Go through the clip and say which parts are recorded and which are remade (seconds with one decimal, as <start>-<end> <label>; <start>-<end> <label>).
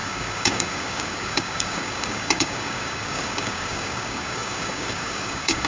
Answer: 0.0-5.7 remade